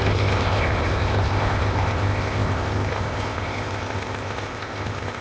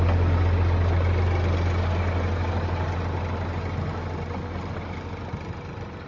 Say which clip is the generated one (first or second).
first